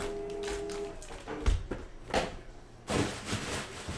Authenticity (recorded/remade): recorded